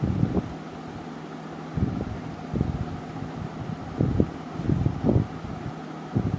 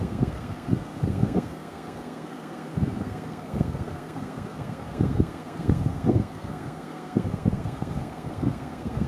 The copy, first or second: second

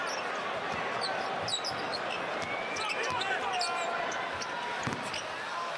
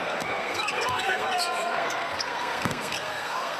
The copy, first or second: second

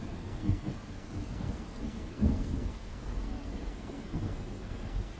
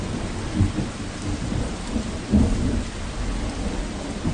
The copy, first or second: first